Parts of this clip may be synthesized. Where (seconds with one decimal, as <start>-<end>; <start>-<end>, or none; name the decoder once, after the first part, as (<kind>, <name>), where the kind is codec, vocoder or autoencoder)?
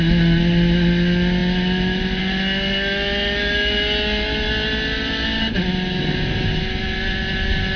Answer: none